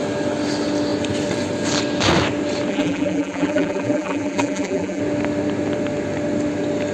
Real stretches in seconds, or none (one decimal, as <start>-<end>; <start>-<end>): 0.0-2.7; 5.0-6.9